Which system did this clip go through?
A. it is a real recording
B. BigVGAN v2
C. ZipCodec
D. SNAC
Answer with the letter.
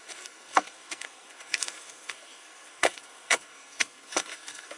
D